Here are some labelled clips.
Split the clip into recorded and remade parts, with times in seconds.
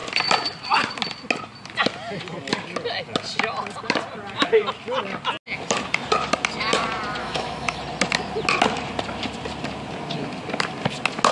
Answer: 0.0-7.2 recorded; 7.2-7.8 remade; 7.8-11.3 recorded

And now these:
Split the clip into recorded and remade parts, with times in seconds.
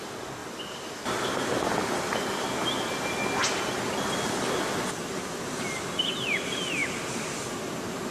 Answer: 0.0-8.1 recorded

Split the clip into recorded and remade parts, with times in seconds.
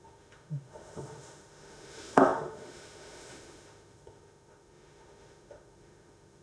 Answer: 0.0-6.4 remade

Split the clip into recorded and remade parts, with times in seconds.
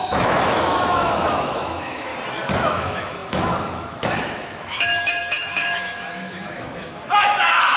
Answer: 0.0-2.1 remade; 2.1-2.6 recorded; 2.6-7.8 remade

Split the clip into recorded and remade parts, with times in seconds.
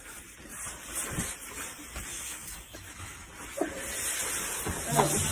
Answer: 0.0-2.1 recorded; 2.1-3.3 remade; 3.3-5.3 recorded